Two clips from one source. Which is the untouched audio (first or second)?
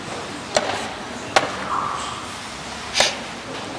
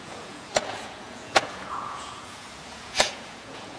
first